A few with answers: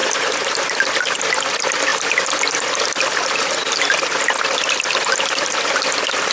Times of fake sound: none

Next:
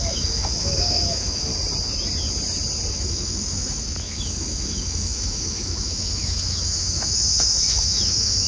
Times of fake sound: 0.0-1.5; 2.9-8.5

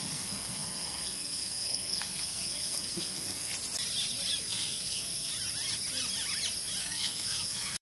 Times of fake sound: 0.0-3.5; 4.4-5.3; 6.8-7.8

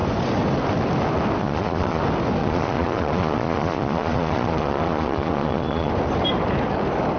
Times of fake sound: 1.4-2.0; 2.4-5.9

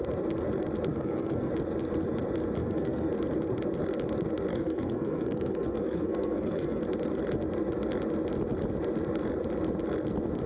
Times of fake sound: 0.9-1.5; 2.6-3.1; 4.5-6.8

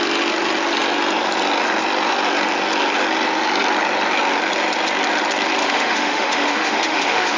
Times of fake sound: 5.6-7.4

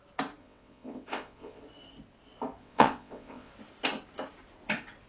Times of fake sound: 0.4-1.6; 2.6-3.5

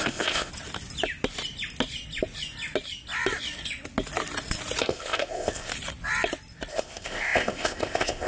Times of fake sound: 0.0-0.5; 4.8-5.7; 6.7-8.3